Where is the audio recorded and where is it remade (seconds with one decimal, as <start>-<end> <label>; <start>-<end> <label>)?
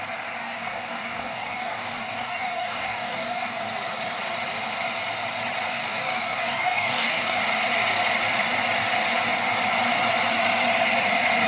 0.0-0.4 recorded; 0.4-3.6 remade; 3.6-5.7 recorded; 5.7-7.4 remade; 7.4-11.5 recorded